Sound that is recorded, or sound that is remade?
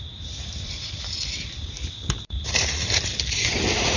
remade